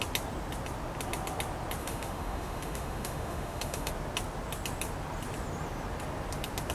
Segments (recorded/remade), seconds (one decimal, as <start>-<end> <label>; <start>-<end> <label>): 0.0-1.8 recorded; 1.8-3.9 remade; 3.9-6.7 recorded